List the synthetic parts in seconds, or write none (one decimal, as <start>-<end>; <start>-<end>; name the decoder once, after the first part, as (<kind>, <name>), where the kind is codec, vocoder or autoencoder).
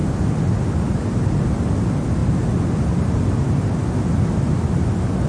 none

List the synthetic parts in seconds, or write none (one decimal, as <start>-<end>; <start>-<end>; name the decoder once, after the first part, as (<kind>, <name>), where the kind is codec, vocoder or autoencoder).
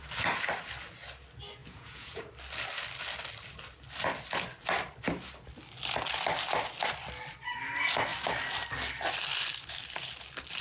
1.6-2.2 (vocoder, Vocos)